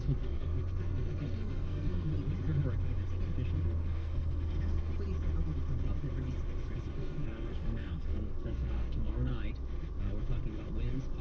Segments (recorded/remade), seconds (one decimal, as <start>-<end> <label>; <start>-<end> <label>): 0.0-2.1 remade; 2.1-3.6 recorded; 3.6-4.9 remade; 4.9-6.9 recorded; 6.9-9.3 remade; 9.3-11.2 recorded